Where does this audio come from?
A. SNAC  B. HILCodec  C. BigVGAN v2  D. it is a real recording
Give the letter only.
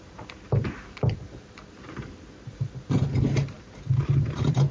C